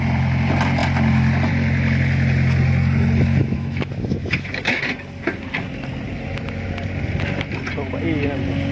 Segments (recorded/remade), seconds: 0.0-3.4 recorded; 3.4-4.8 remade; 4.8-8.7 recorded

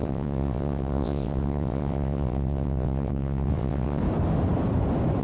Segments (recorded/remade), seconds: 0.0-4.0 remade; 4.0-5.2 recorded

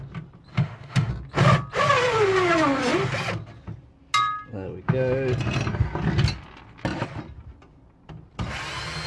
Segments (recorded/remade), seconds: 0.0-0.5 recorded; 0.5-1.1 remade; 1.1-9.1 recorded

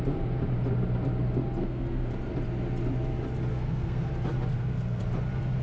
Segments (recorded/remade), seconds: 0.0-1.6 recorded; 1.6-2.1 remade; 2.1-3.5 recorded; 3.5-4.1 remade; 4.1-4.5 recorded; 4.5-5.0 remade; 5.0-5.6 recorded

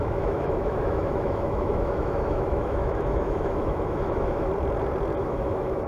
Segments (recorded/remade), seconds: 0.0-4.5 remade; 4.5-5.2 recorded; 5.2-5.9 remade

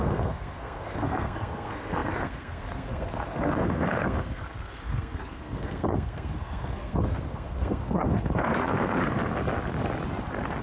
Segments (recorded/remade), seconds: 0.0-9.3 remade; 9.3-10.6 recorded

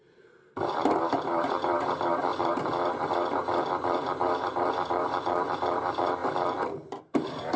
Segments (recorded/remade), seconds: 0.0-7.6 remade

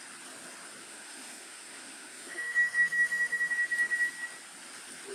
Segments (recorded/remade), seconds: 0.0-0.8 recorded; 0.8-3.5 remade; 3.5-5.1 recorded